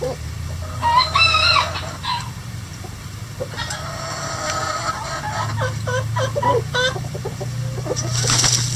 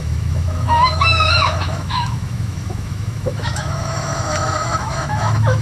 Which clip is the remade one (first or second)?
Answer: second